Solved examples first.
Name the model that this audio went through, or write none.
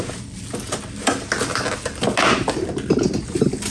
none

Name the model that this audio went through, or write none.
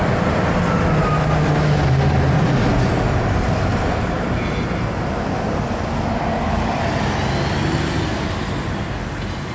none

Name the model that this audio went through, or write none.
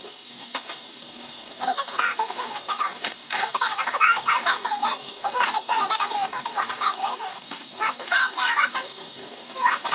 codec, DAC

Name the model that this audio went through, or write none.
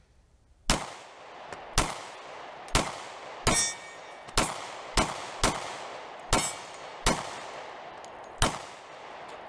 none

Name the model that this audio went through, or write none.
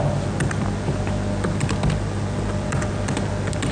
none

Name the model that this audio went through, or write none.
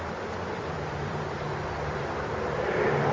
vocoder, BigVGAN v2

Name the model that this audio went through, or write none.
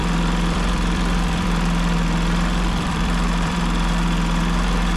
vocoder, BigVGAN v2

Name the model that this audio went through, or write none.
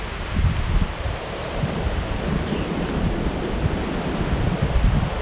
vocoder, BigVGAN v2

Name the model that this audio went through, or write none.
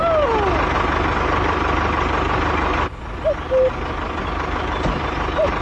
none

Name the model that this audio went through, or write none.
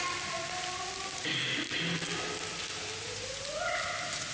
none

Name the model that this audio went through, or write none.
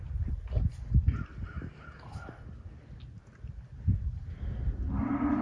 none